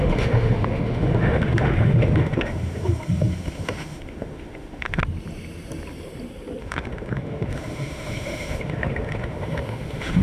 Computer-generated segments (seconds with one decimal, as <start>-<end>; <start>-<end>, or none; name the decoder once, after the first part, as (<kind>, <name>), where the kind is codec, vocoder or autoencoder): 0.0-5.0 (autoencoder, DAC-VAE); 6.6-10.2